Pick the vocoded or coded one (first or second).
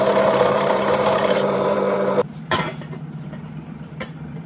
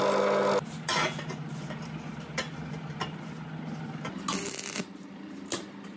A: first